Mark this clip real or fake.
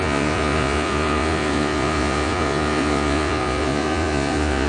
fake